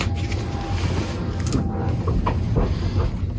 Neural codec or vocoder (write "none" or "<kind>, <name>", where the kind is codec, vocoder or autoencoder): none